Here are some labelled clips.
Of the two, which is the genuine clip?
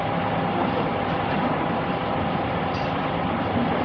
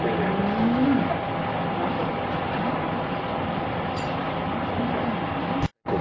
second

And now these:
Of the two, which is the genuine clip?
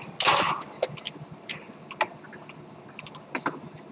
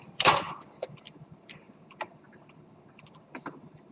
first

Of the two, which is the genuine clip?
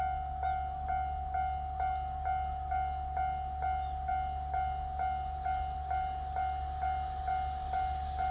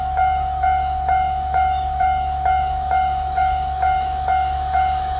first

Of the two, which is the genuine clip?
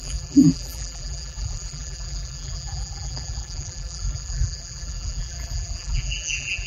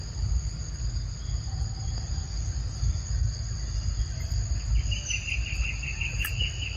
second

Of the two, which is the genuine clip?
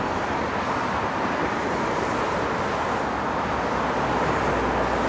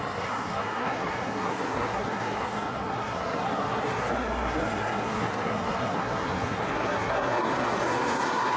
first